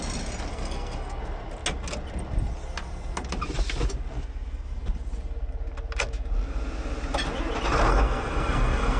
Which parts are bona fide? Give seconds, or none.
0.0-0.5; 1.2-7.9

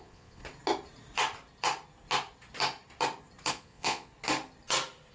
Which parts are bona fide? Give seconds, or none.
0.4-3.5; 4.1-5.1